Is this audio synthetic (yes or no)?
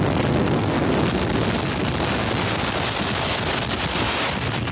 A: no